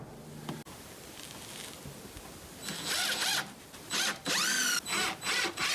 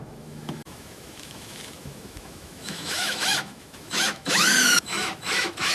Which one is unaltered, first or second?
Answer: first